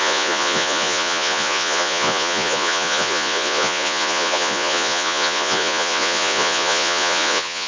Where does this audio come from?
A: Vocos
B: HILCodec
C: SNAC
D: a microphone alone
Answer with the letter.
A